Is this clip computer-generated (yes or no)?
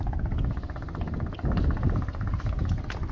no